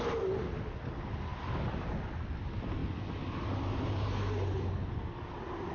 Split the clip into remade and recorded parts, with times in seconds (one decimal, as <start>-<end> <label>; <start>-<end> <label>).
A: 0.0-5.7 recorded